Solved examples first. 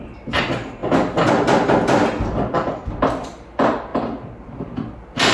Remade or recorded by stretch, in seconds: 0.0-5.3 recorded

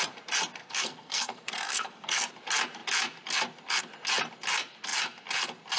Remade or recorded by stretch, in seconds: 0.0-0.6 recorded; 0.6-2.3 remade; 2.3-5.8 recorded

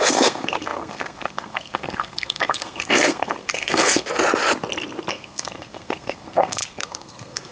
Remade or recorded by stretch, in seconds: 0.0-4.1 remade; 4.1-5.1 recorded; 5.1-7.5 remade

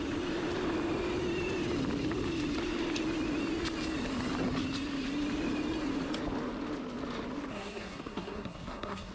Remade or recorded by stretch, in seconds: 0.0-7.5 recorded; 7.5-9.1 remade

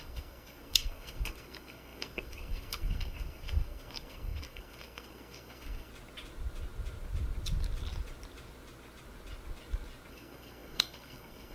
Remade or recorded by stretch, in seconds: 0.0-5.9 remade; 5.9-10.1 recorded; 10.1-11.5 remade

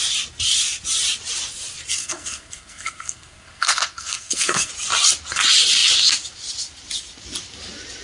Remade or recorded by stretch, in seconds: 0.0-2.0 recorded; 2.0-4.7 remade; 4.7-8.0 recorded